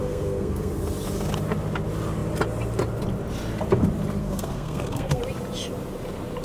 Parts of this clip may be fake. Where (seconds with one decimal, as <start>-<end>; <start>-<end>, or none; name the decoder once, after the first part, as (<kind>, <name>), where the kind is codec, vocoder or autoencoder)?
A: 0.0-0.7 (codec, SNAC); 4.2-5.2